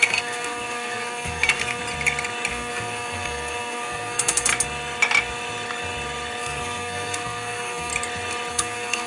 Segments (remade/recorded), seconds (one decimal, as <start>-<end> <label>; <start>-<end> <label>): 0.0-1.8 remade; 1.8-2.5 recorded; 2.5-4.5 remade; 4.5-6.4 recorded; 6.4-7.9 remade; 7.9-8.5 recorded; 8.5-9.1 remade